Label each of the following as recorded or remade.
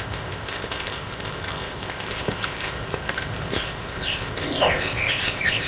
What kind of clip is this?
remade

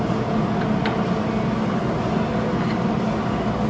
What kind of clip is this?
recorded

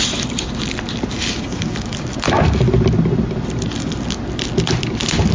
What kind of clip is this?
recorded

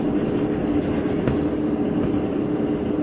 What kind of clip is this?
recorded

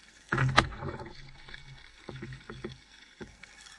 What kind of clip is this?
remade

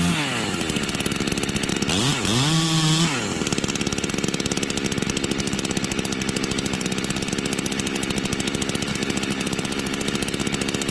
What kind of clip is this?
recorded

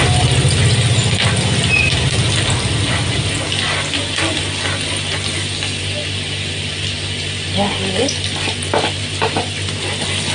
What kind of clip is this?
recorded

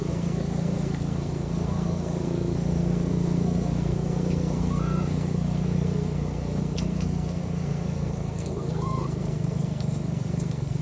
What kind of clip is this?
remade